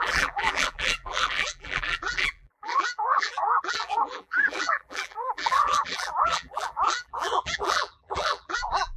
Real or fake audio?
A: fake